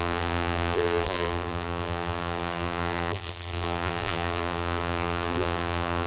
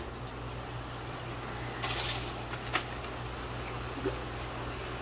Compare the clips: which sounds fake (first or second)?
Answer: first